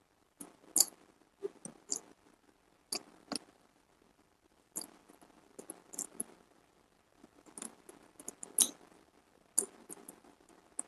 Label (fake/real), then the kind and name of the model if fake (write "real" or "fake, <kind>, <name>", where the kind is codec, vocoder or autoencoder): real